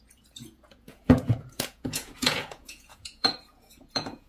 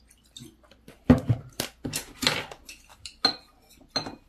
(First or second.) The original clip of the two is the second